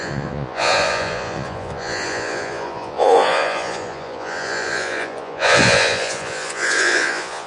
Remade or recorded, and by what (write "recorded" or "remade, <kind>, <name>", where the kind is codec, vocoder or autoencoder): remade, vocoder, Vocos